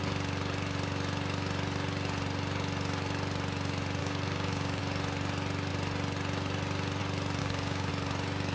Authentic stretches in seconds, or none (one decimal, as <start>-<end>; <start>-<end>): 0.0-4.0; 4.8-7.4; 7.9-8.5

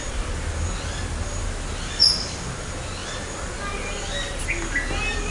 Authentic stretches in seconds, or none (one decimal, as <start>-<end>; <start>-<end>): 0.0-5.3